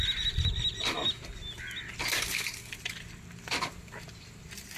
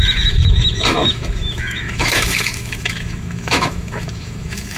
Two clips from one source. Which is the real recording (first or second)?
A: first